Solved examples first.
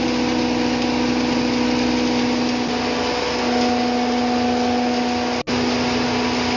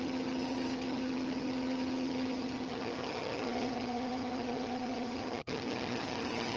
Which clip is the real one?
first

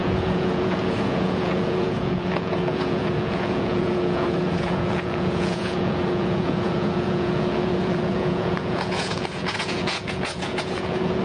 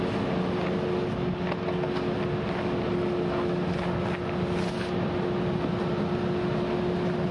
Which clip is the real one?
second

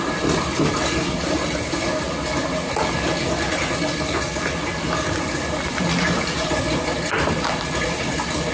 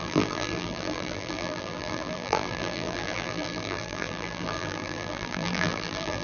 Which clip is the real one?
first